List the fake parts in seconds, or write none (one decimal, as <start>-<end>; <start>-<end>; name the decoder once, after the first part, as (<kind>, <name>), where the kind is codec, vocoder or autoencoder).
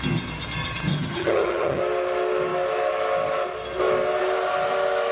0.9-1.8 (vocoder, HiFi-GAN)